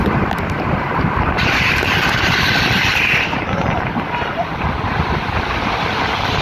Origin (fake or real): fake